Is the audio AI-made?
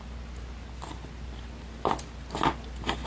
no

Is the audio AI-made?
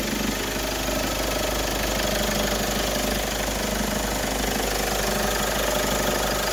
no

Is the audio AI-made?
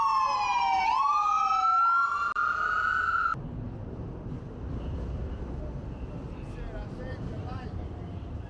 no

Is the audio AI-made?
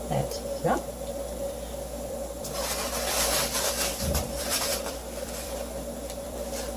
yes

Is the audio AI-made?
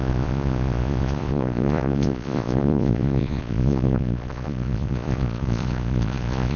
yes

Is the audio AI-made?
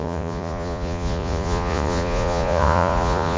yes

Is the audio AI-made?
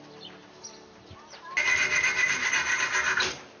no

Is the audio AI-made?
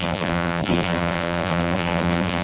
yes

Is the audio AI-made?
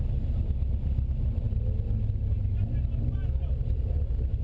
no